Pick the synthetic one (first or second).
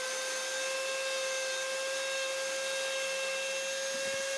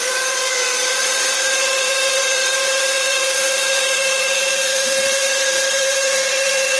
second